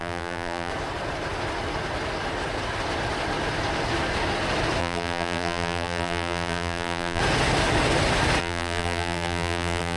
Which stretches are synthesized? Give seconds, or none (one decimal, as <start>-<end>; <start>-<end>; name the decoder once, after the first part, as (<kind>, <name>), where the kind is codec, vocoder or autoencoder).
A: 0.0-0.7 (vocoder, BigVGAN v2); 4.8-7.2; 8.4-10.0